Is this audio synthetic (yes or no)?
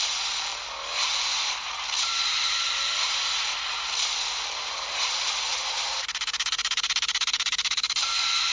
no